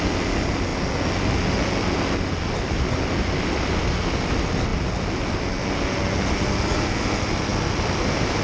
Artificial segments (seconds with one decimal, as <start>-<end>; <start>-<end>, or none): none